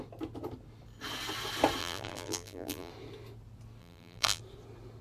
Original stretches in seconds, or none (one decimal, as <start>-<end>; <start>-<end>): 0.0-1.8; 2.9-3.8; 4.4-5.0